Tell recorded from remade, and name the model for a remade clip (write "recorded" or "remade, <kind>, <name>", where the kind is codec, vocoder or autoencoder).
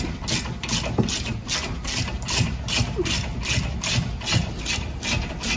recorded